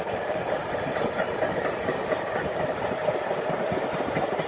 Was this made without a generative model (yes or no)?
no